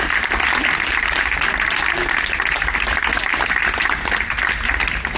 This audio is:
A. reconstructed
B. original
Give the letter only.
B